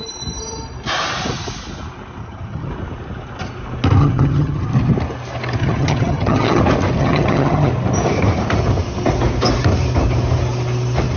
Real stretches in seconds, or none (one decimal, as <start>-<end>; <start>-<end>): 0.0-2.2; 2.7-4.0; 4.7-5.6; 6.6-7.0; 7.7-11.2